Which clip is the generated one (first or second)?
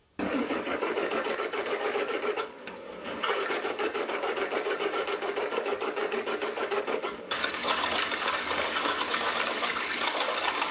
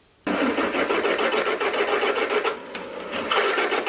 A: first